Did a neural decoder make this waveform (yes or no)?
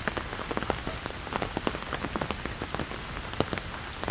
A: no